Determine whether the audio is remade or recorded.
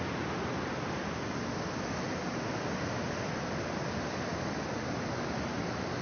recorded